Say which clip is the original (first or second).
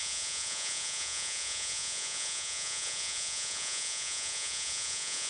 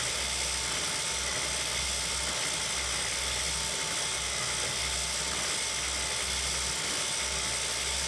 second